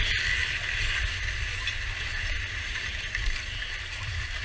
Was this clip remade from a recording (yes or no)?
no